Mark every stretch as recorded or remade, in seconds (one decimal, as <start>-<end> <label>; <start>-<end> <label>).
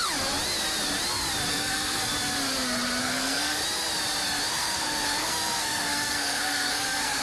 0.0-1.5 recorded; 1.5-2.1 remade; 2.1-3.0 recorded; 3.0-3.6 remade; 3.6-4.5 recorded; 4.5-7.2 remade